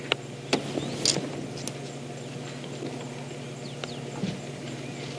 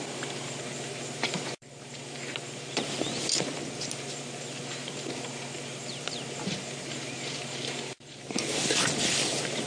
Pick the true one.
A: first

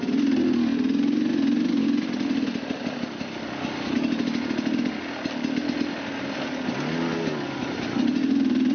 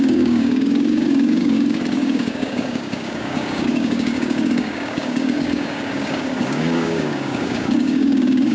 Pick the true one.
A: first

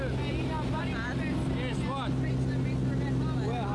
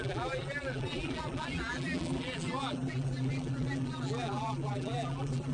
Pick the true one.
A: first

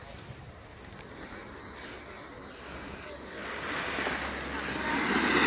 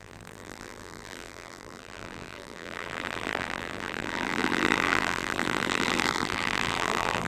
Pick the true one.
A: first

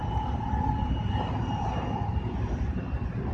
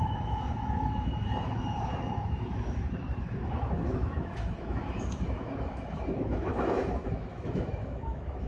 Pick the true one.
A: first